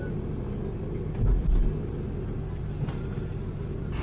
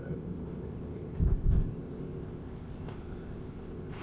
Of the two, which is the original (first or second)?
first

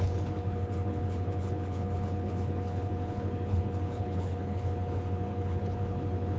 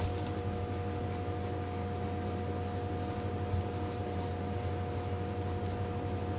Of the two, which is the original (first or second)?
second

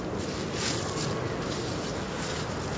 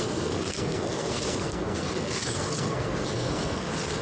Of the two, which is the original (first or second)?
first